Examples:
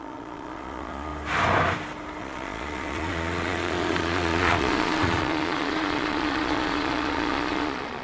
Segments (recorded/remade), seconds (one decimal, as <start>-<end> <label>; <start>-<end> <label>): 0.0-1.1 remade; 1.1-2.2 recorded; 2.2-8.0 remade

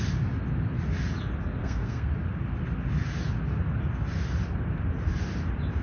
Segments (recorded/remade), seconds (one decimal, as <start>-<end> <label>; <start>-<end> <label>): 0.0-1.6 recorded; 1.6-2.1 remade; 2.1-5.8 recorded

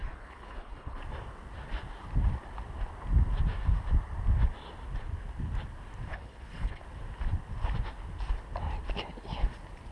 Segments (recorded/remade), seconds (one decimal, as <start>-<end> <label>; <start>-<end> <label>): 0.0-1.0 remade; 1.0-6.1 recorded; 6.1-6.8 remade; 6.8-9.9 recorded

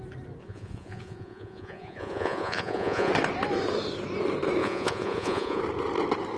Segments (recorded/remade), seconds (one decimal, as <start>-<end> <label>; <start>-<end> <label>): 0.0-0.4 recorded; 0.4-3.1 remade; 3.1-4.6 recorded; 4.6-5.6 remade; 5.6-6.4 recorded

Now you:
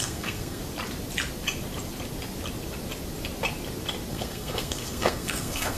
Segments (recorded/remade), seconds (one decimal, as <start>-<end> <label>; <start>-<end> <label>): 0.0-0.6 remade; 0.6-4.1 recorded; 4.1-5.8 remade

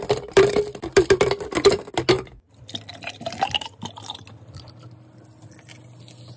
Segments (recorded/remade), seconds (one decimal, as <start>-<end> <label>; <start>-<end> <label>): 0.0-2.9 recorded; 2.9-4.2 remade; 4.2-6.4 recorded